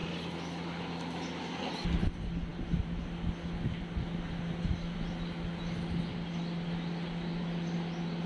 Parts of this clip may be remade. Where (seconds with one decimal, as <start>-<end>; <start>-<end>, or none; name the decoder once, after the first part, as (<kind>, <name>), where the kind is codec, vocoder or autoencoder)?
none